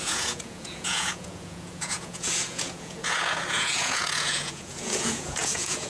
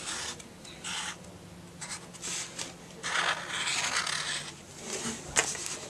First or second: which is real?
second